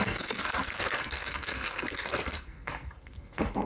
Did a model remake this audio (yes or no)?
yes